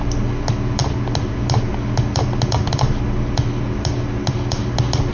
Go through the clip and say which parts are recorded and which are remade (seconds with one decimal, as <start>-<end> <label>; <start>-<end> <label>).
0.0-5.1 recorded